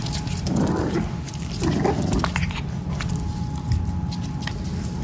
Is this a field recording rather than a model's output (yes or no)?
yes